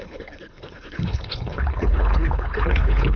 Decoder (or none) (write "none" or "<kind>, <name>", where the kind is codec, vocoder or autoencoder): codec, HILCodec